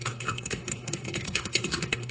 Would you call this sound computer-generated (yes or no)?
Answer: yes